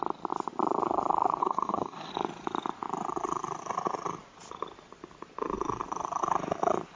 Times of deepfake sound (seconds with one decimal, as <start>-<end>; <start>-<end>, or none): 1.4-2.1